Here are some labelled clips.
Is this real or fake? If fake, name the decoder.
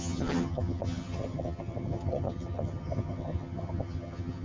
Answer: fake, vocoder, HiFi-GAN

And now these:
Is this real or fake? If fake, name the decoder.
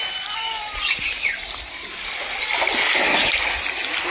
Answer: real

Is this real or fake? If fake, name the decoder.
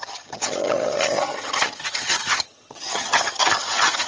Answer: fake, vocoder, HiFi-GAN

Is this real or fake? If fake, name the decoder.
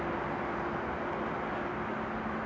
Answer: real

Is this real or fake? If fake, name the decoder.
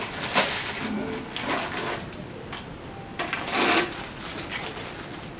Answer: real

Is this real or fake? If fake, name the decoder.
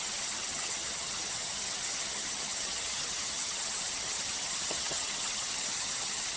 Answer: fake, vocoder, HiFi-GAN